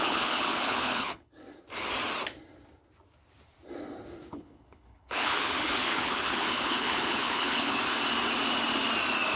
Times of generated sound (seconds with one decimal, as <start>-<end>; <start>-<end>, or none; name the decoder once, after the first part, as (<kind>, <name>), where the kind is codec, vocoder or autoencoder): 0.0-1.3 (codec, HILCodec); 4.3-7.8